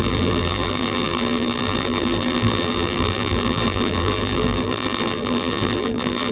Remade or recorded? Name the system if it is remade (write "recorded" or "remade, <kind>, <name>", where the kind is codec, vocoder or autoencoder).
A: remade, vocoder, BigVGAN v2